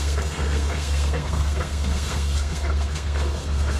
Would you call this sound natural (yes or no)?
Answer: no